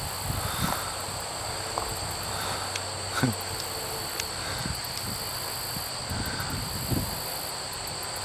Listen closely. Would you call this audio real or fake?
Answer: real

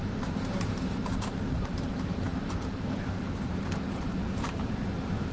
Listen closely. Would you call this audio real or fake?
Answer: fake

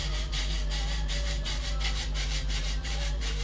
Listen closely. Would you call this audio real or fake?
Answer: fake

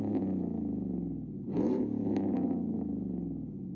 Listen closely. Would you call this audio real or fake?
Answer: real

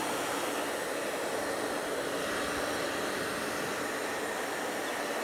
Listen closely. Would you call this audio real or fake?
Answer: real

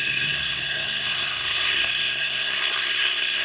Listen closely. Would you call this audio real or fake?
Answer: fake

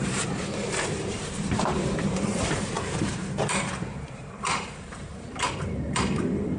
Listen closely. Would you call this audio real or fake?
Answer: fake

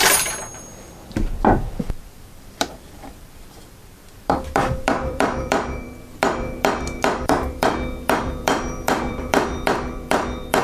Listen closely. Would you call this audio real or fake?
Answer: fake